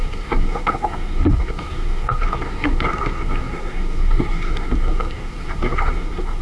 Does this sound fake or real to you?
fake